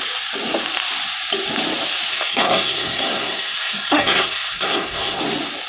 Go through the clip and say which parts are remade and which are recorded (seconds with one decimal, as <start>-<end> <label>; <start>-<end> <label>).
0.0-2.1 recorded; 2.1-5.2 remade; 5.2-5.7 recorded